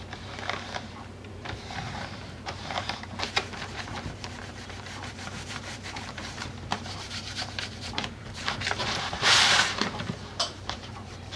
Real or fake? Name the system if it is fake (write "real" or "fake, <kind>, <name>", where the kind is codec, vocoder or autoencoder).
fake, vocoder, BigVGAN v2